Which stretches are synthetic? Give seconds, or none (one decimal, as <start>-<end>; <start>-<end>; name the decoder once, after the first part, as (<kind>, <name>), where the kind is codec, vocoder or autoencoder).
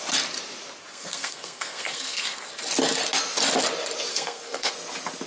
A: 0.9-2.5 (codec, SNAC); 4.1-4.7